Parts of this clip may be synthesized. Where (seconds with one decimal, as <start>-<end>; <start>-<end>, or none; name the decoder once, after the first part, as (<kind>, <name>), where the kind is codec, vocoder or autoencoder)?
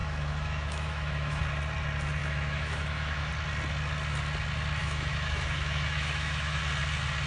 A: 0.0-1.4 (autoencoder, DAC-VAE); 2.2-3.3; 4.8-6.6